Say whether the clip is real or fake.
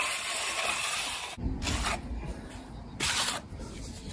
real